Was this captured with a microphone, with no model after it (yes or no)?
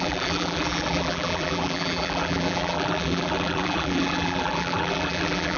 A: no